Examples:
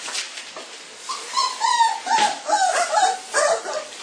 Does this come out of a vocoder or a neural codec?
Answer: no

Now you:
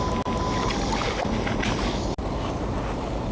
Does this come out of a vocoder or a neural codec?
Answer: no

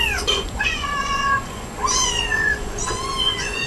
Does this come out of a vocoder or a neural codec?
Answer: yes